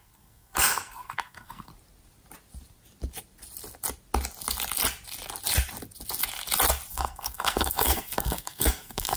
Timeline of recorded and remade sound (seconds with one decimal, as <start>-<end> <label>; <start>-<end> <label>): 0.0-1.7 remade; 1.7-6.9 recorded; 6.9-9.2 remade